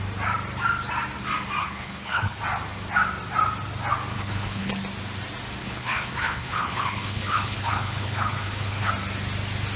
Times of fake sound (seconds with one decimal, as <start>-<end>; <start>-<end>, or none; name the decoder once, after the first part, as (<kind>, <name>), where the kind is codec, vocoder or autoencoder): 1.6-2.4 (codec, HILCodec); 4.1-4.7; 5.6-8.9